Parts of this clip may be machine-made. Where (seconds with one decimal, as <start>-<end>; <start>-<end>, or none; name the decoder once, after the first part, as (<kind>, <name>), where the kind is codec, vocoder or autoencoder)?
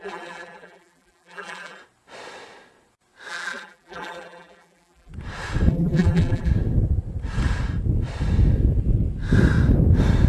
0.0-1.8 (vocoder, BigVGAN v2); 3.3-5.1; 5.7-6.5